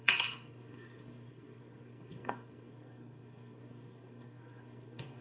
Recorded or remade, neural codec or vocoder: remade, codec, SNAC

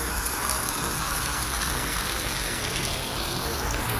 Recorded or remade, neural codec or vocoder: remade, codec, SNAC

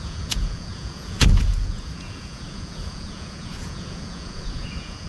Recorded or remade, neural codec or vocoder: remade, vocoder, Vocos